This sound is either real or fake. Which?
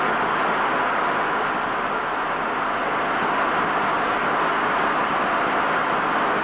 real